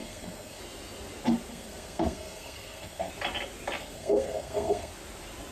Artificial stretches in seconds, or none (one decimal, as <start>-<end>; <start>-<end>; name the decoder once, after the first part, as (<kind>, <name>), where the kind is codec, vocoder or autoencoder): 0.0-0.6 (codec, SNAC); 1.5-3.1; 3.8-4.9